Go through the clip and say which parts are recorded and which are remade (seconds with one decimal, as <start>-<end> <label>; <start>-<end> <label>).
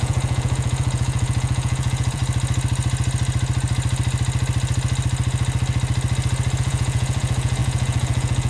0.0-2.2 remade; 2.2-6.6 recorded; 6.6-8.5 remade